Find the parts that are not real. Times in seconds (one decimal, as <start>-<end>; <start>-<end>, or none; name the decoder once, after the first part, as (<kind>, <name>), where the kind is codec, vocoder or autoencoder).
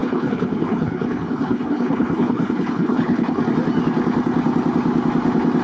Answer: 0.0-3.4 (codec, HILCodec)